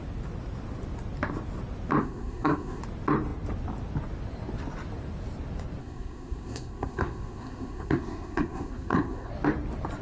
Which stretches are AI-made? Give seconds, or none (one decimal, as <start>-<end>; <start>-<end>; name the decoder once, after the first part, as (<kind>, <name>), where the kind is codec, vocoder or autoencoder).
2.0-2.8 (codec, SNAC); 5.8-9.3